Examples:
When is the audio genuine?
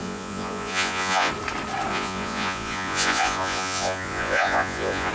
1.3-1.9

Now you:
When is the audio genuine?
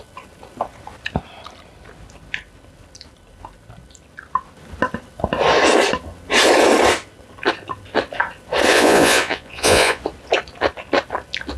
0.0-8.7; 10.0-11.6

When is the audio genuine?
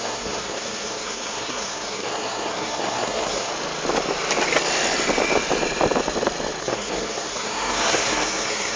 3.5-6.6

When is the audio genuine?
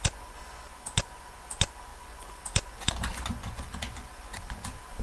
none